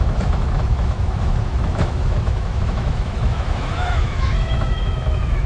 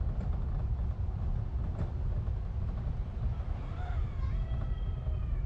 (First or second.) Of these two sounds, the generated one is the first